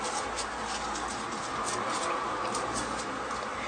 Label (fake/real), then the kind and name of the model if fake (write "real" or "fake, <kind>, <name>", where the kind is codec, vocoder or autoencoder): real